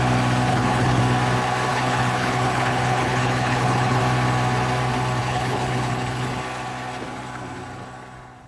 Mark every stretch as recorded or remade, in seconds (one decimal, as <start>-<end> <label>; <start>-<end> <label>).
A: 0.0-0.5 recorded; 0.5-1.0 remade; 1.0-1.7 recorded; 1.7-4.0 remade; 4.0-5.2 recorded; 5.2-6.3 remade; 6.3-8.5 recorded